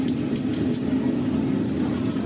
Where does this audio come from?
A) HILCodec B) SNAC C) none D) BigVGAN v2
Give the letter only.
C